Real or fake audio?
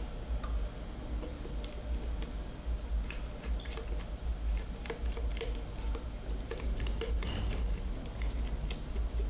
real